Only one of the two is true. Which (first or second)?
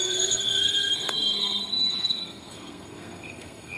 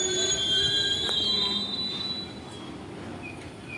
second